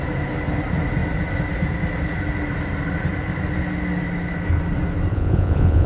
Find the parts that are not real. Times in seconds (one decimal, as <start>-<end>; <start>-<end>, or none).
5.1-5.9